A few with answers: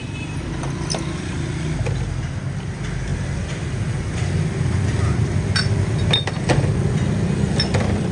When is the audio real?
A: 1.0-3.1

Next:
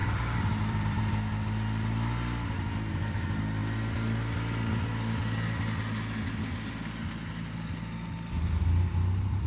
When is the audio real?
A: 1.0-9.5

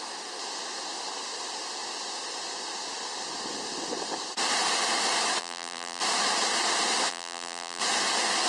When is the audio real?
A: 0.0-5.4; 6.0-7.1; 7.8-8.5

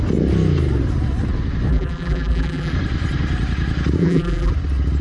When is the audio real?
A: 0.0-1.7; 2.7-4.0; 4.5-5.0